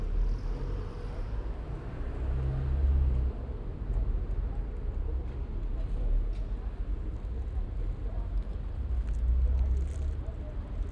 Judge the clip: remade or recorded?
recorded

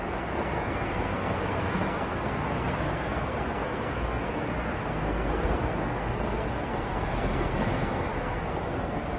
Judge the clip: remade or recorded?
remade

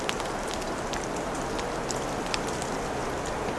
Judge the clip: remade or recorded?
recorded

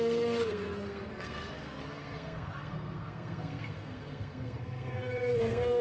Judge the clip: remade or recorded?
remade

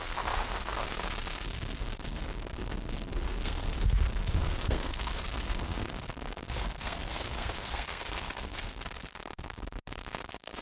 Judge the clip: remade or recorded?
remade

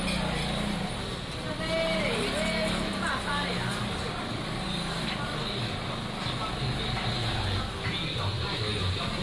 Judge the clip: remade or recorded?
recorded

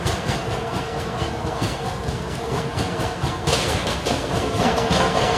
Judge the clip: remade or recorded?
remade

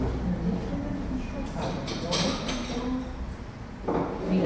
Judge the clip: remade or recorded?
recorded